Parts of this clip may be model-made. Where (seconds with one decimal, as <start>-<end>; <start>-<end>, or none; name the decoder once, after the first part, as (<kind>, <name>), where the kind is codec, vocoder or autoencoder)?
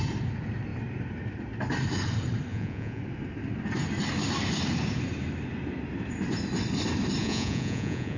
2.5-3.0 (vocoder, Vocos); 7.2-8.2